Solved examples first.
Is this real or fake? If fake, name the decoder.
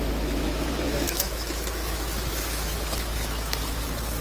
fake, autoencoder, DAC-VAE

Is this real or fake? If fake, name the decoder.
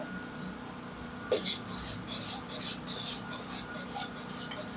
real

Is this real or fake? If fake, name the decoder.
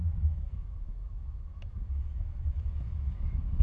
fake, autoencoder, DAC-VAE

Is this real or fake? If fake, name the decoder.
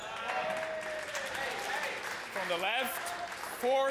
real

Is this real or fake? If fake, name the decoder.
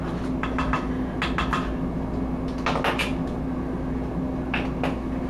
real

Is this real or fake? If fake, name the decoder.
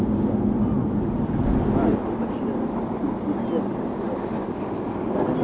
real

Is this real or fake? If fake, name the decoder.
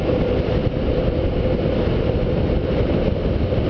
real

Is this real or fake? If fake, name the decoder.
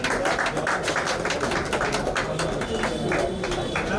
real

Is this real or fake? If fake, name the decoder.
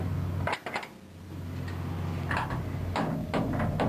real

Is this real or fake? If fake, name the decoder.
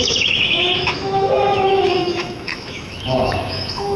fake, autoencoder, DAC-VAE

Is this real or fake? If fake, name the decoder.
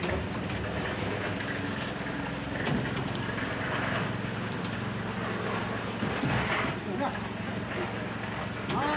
real